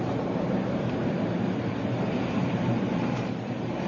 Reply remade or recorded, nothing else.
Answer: remade